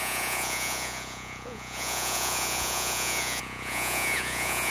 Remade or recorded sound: remade